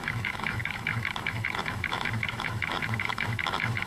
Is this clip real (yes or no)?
no